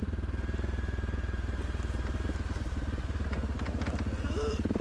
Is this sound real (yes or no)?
yes